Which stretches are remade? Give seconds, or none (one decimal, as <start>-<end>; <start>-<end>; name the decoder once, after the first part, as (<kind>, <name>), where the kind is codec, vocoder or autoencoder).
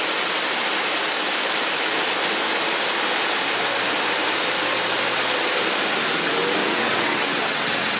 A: 6.6-8.0 (vocoder, WaveNeXt)